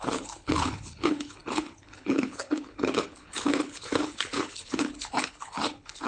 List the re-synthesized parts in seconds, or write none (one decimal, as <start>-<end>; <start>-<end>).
0.0-6.1